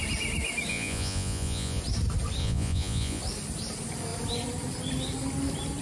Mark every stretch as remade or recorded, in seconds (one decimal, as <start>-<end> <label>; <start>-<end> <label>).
0.0-0.7 recorded; 0.7-1.8 remade; 1.8-2.4 recorded; 2.4-3.2 remade; 3.2-5.8 recorded